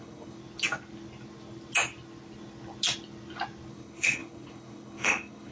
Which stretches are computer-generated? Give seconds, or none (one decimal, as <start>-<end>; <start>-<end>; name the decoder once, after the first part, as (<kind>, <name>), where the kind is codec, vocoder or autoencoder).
0.0-0.4 (codec, HILCodec); 3.7-5.5